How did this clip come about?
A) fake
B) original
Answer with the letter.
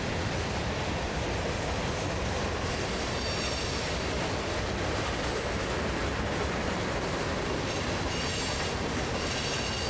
B